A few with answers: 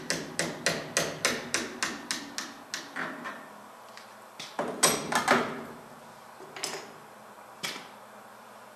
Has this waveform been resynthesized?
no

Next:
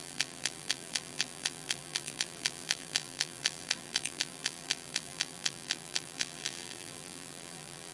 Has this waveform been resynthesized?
yes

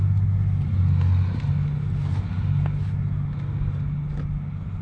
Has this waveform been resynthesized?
no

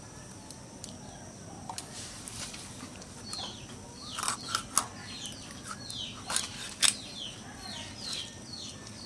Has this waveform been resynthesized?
no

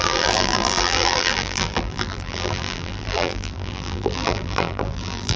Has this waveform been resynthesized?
yes